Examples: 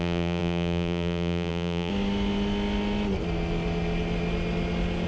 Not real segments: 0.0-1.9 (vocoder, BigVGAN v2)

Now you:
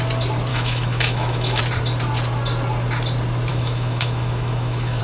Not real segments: 0.5-1.6 (autoencoder, DAC-VAE); 3.5-5.0